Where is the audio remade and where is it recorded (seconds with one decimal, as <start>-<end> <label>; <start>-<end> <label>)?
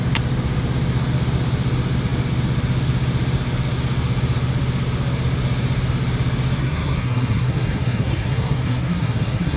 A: 0.0-6.6 recorded; 6.6-9.6 remade